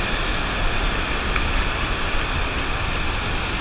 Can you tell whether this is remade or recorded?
recorded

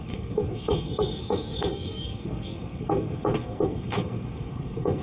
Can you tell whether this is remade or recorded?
remade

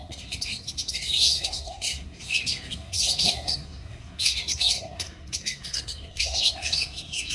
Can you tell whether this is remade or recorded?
remade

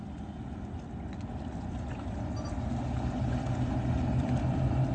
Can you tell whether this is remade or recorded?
recorded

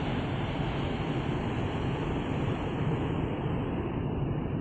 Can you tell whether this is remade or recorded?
recorded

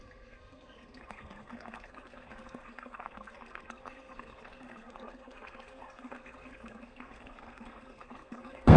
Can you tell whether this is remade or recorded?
remade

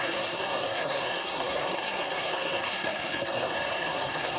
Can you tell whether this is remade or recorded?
remade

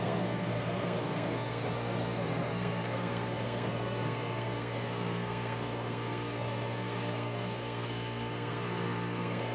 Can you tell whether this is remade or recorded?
remade